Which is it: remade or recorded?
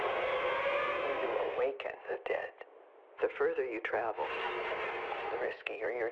recorded